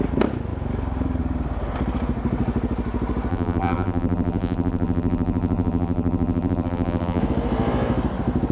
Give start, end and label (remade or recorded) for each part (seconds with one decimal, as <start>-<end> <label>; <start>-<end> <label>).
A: 0.0-3.3 recorded; 3.3-7.2 remade; 7.2-8.5 recorded